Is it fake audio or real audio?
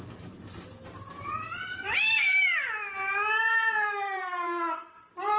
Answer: fake